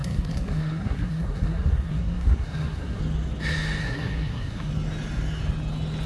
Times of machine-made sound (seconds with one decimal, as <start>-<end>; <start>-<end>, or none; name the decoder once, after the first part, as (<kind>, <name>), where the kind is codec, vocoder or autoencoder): 0.0-3.0 (codec, SNAC); 3.8-4.7